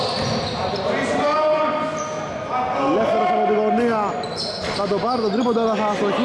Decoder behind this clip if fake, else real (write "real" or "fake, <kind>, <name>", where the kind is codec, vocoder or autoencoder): real